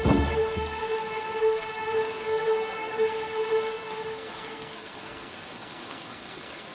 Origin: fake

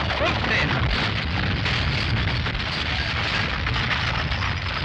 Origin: real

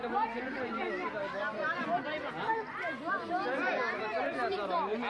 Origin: real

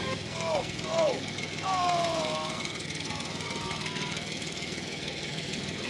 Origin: fake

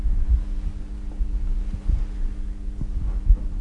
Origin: real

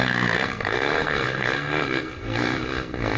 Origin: fake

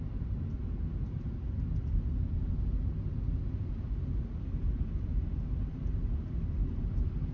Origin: real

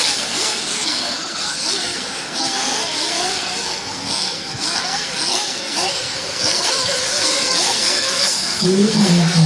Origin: fake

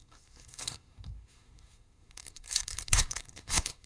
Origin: fake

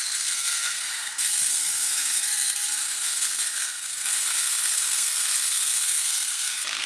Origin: fake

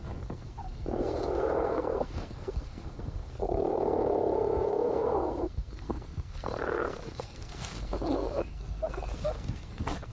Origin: fake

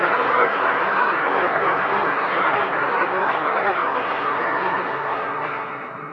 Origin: fake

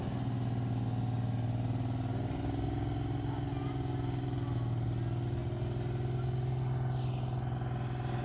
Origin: real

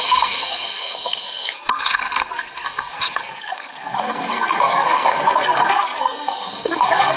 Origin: fake